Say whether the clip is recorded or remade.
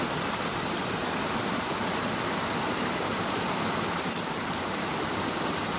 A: remade